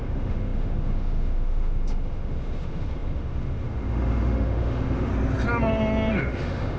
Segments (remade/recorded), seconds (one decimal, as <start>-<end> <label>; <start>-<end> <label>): 0.0-5.1 remade; 5.1-6.1 recorded; 6.1-6.8 remade